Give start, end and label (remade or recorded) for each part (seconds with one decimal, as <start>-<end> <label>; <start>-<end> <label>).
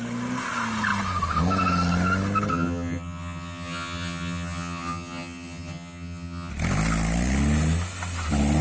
0.0-2.5 recorded; 2.5-6.5 remade; 6.5-8.6 recorded